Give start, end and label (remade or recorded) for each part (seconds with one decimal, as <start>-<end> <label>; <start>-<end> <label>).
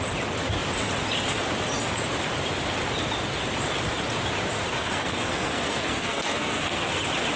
0.0-4.7 recorded; 4.7-7.0 remade; 7.0-7.4 recorded